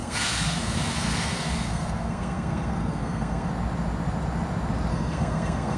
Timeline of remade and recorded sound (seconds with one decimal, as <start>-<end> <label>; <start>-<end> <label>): 0.0-3.5 remade; 3.5-4.9 recorded; 4.9-5.8 remade